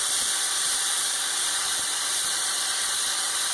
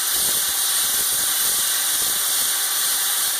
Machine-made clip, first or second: first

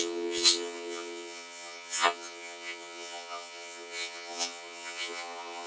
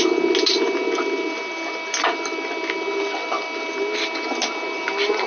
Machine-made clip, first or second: first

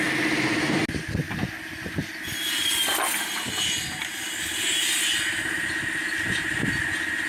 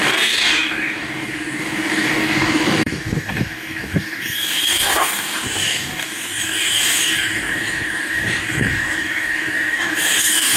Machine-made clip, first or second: second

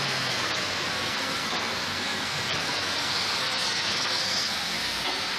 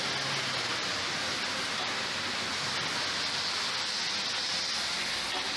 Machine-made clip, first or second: first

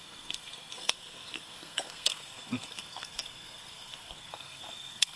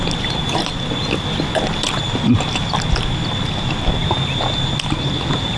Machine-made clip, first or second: first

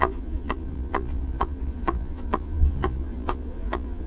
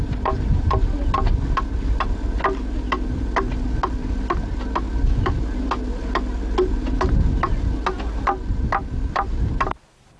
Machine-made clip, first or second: first